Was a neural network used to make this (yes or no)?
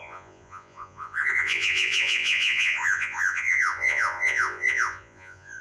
yes